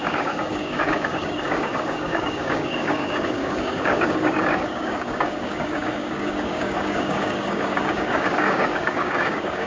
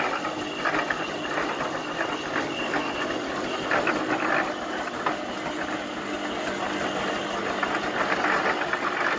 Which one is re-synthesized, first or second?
first